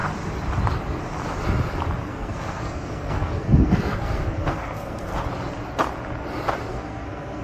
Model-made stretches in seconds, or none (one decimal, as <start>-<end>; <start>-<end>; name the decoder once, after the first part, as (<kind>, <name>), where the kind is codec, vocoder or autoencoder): 2.1-5.1 (codec, SNAC); 6.7-7.4